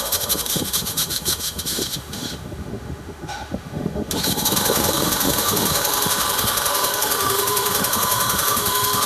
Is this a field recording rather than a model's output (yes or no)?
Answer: no